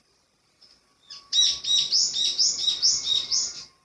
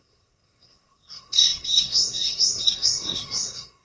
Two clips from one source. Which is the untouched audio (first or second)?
first